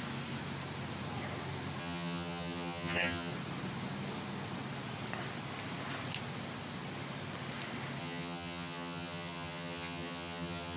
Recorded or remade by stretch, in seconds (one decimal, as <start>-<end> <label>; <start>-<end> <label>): 0.0-1.8 recorded; 1.8-3.3 remade; 3.3-8.0 recorded; 8.0-10.8 remade